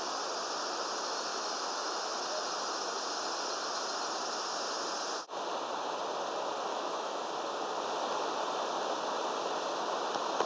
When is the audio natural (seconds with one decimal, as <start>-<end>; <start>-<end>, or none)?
0.0-1.3; 2.2-6.7; 7.3-10.5